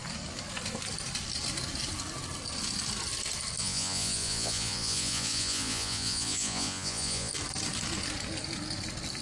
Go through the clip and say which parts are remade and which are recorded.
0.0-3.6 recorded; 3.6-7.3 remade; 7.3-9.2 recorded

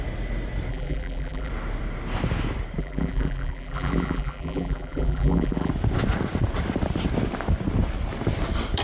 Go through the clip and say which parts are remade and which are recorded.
0.0-0.7 recorded; 0.7-1.5 remade; 1.5-2.8 recorded; 2.8-5.7 remade; 5.7-8.8 recorded

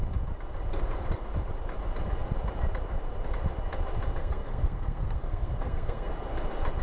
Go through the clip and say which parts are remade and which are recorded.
0.0-4.2 recorded; 4.2-6.1 remade; 6.1-6.8 recorded

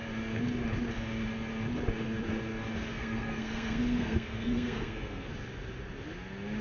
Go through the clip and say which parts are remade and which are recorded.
0.0-2.9 recorded; 2.9-5.3 remade; 5.3-6.6 recorded

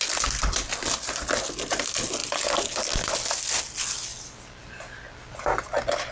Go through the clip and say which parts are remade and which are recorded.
0.0-6.1 recorded